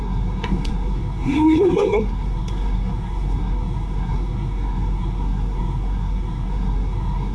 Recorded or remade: remade